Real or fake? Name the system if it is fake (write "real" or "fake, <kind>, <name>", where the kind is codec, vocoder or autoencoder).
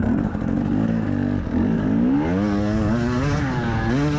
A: fake, codec, DAC